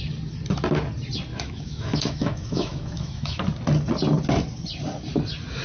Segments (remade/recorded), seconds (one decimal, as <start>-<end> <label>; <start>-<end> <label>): 0.0-1.3 recorded; 1.3-3.4 remade; 3.4-5.6 recorded